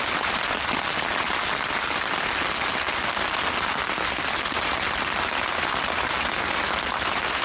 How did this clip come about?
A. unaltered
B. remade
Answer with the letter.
A